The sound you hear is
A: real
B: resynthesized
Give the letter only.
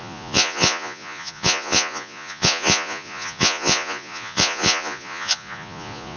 B